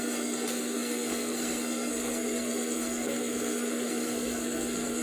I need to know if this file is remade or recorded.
remade